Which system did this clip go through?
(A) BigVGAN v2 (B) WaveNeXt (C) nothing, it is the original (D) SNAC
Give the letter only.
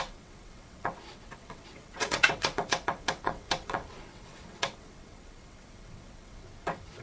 B